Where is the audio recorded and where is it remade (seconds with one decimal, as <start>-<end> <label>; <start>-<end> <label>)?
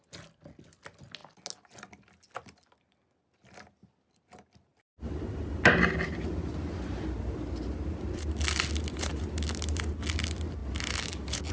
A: 0.0-11.5 recorded